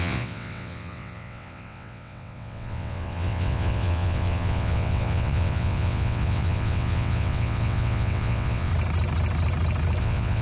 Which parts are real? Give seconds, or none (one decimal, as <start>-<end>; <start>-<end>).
8.7-10.0